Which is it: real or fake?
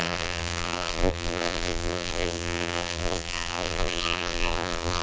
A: fake